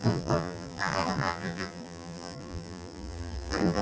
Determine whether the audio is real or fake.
fake